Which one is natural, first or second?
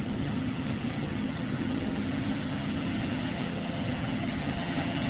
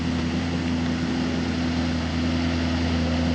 second